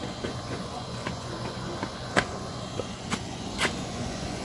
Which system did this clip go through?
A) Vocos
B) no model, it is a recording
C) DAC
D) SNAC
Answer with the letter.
A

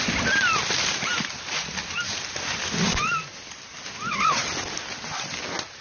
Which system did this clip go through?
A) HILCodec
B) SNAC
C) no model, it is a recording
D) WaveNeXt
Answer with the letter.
C